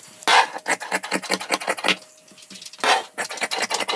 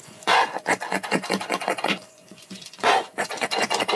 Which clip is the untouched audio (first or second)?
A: first